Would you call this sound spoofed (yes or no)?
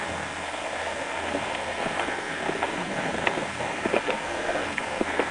yes